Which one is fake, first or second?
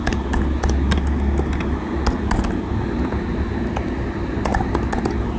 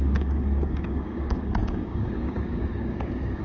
second